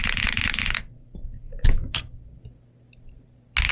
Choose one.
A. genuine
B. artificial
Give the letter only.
A